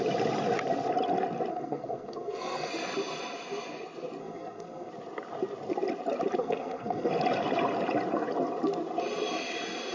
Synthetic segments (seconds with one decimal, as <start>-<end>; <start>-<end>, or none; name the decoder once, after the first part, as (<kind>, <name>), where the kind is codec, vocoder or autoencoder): 1.5-2.7 (codec, SNAC); 4.2-4.9; 6.4-7.1